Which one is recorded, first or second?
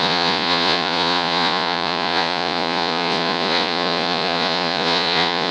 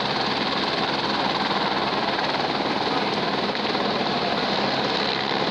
second